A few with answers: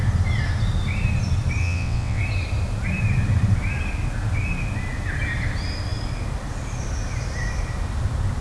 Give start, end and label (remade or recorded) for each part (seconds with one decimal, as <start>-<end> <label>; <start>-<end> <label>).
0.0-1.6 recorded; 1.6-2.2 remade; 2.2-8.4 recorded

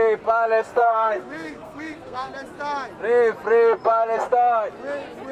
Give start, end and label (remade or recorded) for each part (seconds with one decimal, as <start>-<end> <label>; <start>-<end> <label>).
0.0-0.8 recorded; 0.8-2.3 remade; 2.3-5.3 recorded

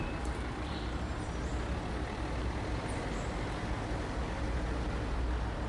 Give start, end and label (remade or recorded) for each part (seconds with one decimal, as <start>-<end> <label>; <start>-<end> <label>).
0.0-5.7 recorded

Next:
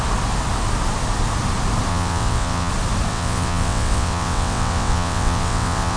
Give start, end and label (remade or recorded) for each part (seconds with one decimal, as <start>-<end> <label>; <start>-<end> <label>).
0.0-1.9 recorded; 1.9-2.7 remade; 2.7-3.1 recorded; 3.1-6.0 remade

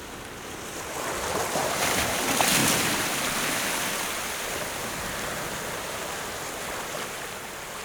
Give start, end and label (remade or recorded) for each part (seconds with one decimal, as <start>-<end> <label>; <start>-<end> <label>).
0.0-1.6 recorded; 1.6-2.2 remade; 2.2-7.8 recorded

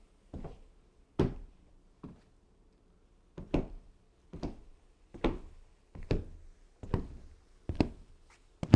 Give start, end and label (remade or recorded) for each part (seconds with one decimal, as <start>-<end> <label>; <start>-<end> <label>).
0.0-8.8 recorded